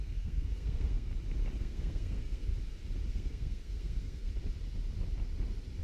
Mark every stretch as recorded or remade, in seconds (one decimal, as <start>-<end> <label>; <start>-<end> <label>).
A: 0.0-1.1 remade; 1.1-1.6 recorded; 1.6-2.5 remade; 2.5-3.1 recorded; 3.1-4.3 remade; 4.3-5.8 recorded